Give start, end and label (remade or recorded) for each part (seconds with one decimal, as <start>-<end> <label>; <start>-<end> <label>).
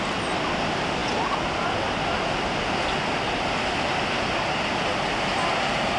0.0-6.0 recorded